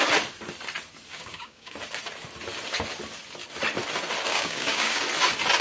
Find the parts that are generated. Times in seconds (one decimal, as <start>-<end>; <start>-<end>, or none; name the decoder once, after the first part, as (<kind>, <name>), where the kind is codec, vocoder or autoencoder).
1.1-1.7 (codec, DAC); 4.3-5.0